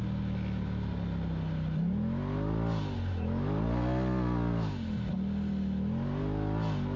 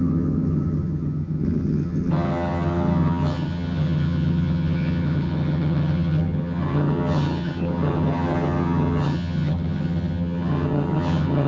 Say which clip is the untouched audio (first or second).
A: first